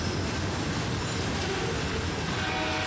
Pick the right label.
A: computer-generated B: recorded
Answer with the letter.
B